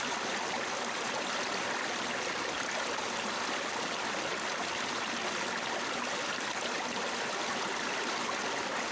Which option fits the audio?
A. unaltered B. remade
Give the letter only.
A